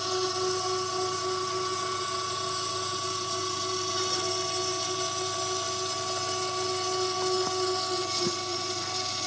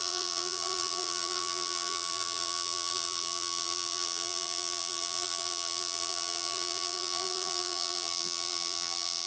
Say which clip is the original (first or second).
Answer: first